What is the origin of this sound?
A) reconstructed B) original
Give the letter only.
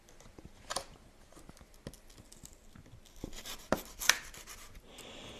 B